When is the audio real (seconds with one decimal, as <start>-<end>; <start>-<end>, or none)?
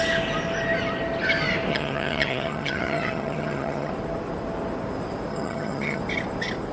0.0-1.7; 3.9-5.3; 6.0-6.7